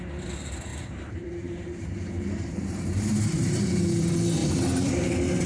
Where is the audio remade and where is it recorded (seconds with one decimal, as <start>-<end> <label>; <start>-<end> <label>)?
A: 0.0-0.7 recorded; 0.7-3.7 remade; 3.7-4.4 recorded; 4.4-4.9 remade; 4.9-5.5 recorded